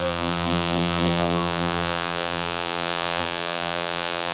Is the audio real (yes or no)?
no